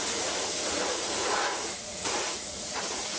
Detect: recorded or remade remade